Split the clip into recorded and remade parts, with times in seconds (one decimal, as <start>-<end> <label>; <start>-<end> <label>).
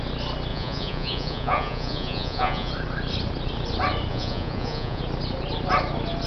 0.0-0.5 recorded; 0.5-2.7 remade; 2.7-4.1 recorded; 4.1-5.0 remade; 5.0-6.3 recorded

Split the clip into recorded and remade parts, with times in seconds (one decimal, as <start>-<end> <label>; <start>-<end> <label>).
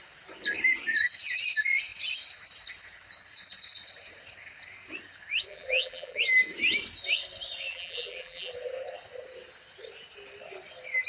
0.0-5.5 recorded; 5.5-6.2 remade; 6.2-7.7 recorded; 7.7-8.5 remade; 8.5-11.1 recorded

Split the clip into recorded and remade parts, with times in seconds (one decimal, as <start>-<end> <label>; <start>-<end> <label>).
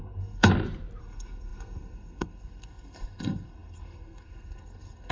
0.0-0.5 remade; 0.5-1.0 recorded; 1.0-5.1 remade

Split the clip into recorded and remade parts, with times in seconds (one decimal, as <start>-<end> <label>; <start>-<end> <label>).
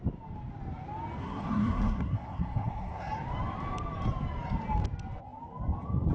0.0-1.2 recorded; 1.2-3.1 remade; 3.1-6.1 recorded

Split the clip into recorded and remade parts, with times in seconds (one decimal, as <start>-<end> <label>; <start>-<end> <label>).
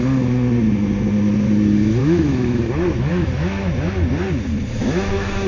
0.0-2.0 recorded; 2.0-2.7 remade; 2.7-3.1 recorded; 3.1-3.6 remade; 3.6-4.8 recorded; 4.8-5.5 remade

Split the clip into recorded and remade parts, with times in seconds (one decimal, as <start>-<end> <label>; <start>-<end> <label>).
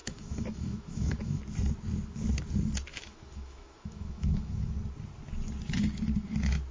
0.0-1.4 remade; 1.4-2.9 recorded; 2.9-4.7 remade; 4.7-6.7 recorded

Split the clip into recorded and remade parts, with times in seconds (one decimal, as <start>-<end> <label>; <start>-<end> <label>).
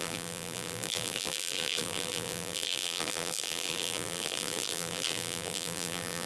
0.0-6.3 remade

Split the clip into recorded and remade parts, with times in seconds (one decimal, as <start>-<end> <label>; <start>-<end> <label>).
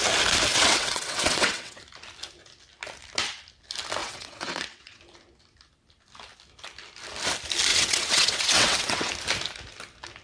0.0-0.5 recorded; 0.5-1.8 remade; 1.8-4.0 recorded; 4.0-5.0 remade; 5.0-7.7 recorded; 7.7-9.1 remade; 9.1-10.2 recorded